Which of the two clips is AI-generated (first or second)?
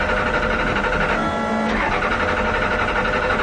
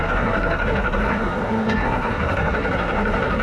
second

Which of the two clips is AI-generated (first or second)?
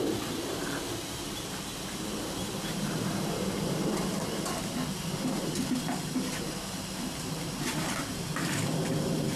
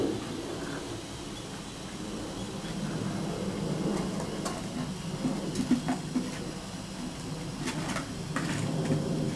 first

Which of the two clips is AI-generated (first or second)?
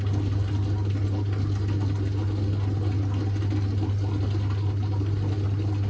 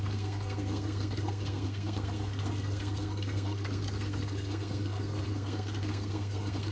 second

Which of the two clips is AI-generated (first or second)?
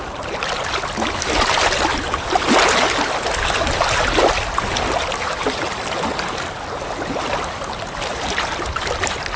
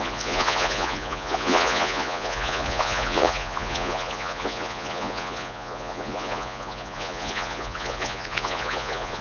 second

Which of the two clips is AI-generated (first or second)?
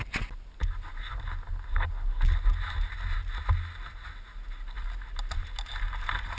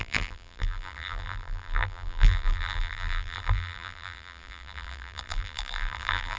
second